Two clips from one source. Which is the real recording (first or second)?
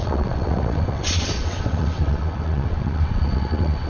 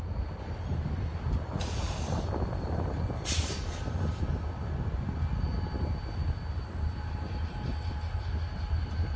second